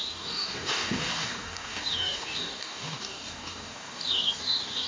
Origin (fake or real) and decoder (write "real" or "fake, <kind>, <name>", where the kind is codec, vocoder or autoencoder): fake, codec, DAC